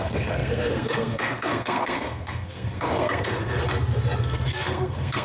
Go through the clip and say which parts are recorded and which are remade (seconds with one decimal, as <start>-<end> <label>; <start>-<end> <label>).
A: 0.0-3.6 remade; 3.6-4.2 recorded; 4.2-5.2 remade